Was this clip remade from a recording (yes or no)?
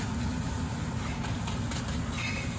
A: no